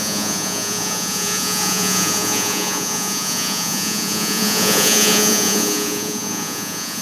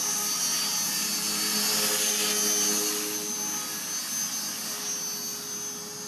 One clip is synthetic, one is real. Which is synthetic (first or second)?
first